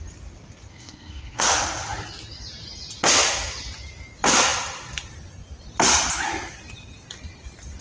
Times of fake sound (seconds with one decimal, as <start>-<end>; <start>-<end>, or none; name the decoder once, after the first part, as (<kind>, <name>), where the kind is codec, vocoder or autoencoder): 0.7-1.4 (codec, SNAC)